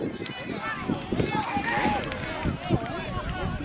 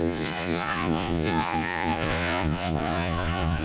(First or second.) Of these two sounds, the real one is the first